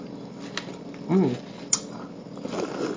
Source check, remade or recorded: recorded